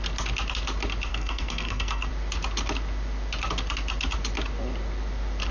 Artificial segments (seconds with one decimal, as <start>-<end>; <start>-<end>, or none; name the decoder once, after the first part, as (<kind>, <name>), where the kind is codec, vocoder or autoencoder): 1.1-2.1 (codec, SNAC)